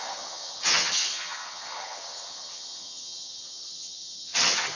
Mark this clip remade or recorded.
remade